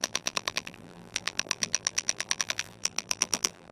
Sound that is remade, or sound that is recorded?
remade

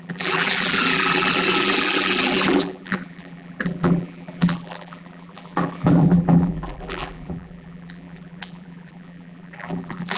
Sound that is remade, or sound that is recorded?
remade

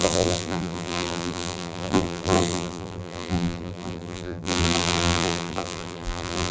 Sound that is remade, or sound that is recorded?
remade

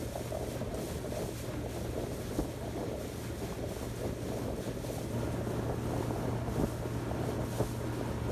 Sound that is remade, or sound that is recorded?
recorded